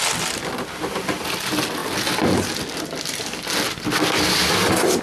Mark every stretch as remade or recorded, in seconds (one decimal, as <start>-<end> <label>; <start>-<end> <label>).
0.0-5.0 recorded